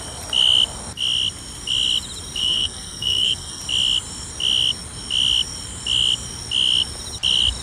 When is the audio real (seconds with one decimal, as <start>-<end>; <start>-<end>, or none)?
0.0-2.4; 3.6-7.6